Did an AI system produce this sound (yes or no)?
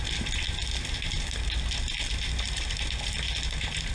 no